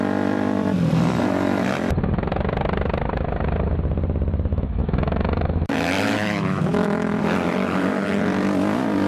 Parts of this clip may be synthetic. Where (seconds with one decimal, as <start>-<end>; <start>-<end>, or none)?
4.5-7.2